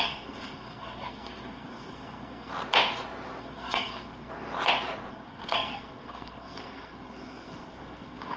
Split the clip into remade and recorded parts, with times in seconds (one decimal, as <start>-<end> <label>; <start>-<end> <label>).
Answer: 0.0-2.5 remade; 2.5-3.4 recorded; 3.4-4.3 remade; 4.3-5.1 recorded; 5.1-8.4 remade